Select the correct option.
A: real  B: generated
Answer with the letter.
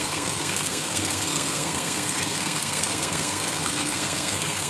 B